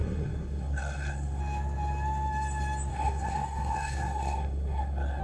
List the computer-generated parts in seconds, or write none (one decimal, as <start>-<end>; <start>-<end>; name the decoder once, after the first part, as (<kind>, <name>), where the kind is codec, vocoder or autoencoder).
0.0-1.4 (codec, SNAC); 2.9-5.2